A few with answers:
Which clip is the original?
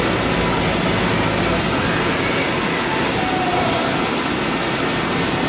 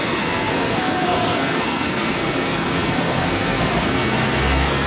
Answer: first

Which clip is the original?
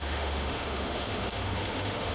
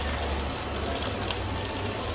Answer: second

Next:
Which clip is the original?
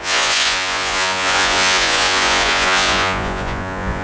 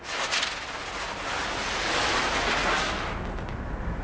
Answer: second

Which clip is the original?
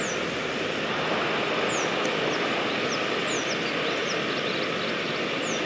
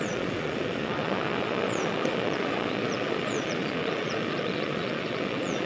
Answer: first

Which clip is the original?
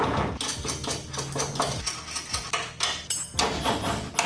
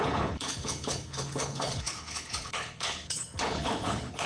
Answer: first